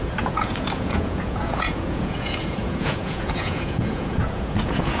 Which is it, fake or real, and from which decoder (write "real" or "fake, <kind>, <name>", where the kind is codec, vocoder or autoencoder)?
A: fake, vocoder, Vocos